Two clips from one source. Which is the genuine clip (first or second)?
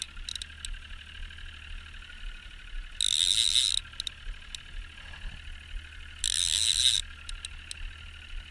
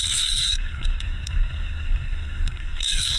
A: first